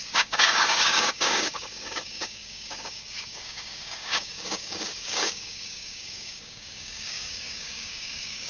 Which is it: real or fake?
fake